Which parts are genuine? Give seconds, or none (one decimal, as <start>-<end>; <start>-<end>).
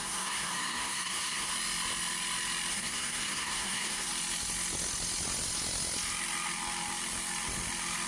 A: 1.5-2.7; 4.1-8.1